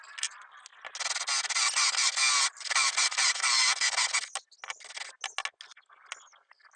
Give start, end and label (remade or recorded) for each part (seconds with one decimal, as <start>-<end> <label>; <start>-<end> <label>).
0.0-6.8 recorded